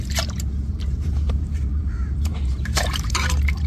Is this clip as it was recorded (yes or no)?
no